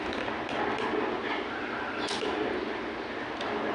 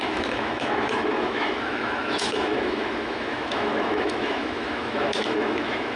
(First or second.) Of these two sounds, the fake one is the second